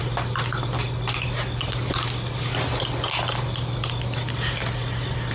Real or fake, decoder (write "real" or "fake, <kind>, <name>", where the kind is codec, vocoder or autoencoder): real